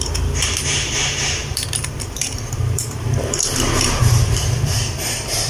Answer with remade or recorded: remade